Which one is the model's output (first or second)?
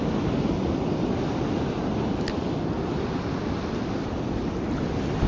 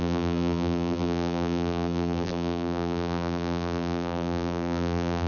second